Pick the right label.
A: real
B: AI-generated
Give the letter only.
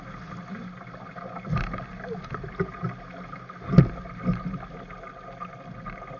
A